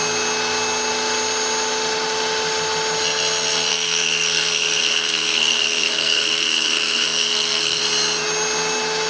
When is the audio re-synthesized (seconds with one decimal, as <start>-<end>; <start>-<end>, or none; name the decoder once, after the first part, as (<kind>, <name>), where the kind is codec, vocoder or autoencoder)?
3.7-7.8 (codec, SNAC)